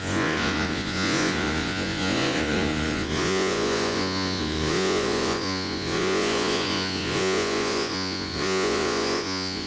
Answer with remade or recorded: remade